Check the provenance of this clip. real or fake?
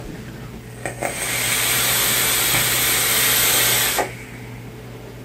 real